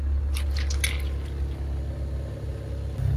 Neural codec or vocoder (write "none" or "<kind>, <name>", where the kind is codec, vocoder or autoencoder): none